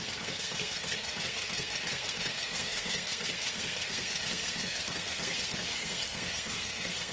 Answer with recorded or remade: remade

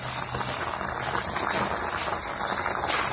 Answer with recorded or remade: recorded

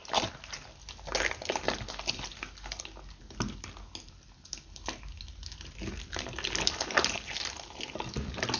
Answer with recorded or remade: recorded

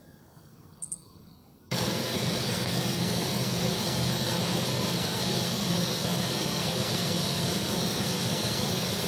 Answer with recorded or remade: remade